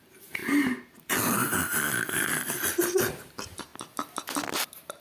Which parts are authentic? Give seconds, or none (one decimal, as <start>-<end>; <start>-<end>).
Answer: 0.4-1.0; 1.6-3.1; 3.7-5.0